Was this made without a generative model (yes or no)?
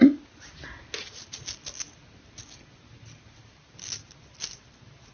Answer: yes